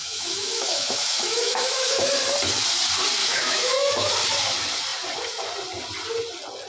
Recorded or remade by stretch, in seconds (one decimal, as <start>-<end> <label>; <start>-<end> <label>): 0.0-2.1 remade; 2.1-3.2 recorded; 3.2-4.1 remade; 4.1-6.7 recorded